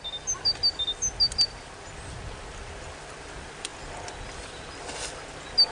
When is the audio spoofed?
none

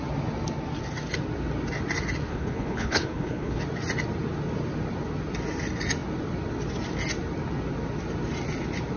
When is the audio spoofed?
2.3-3.6 (codec, HILCodec)